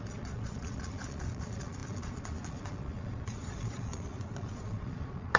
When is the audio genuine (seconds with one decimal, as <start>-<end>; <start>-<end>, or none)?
none